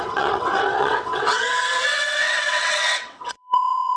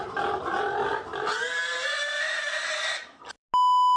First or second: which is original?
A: second